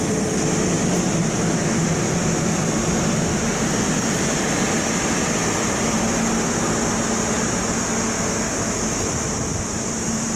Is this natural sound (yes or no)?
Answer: yes